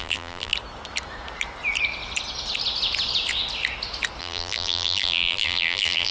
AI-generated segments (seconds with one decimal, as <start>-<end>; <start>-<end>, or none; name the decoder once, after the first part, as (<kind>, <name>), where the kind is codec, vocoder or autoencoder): 0.0-0.5 (vocoder, BigVGAN v2); 4.2-6.1